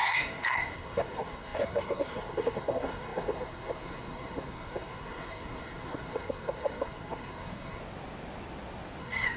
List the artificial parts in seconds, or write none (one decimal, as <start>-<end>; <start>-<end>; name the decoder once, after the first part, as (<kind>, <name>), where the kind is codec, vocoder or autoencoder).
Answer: 0.0-7.8 (codec, SNAC); 9.0-9.4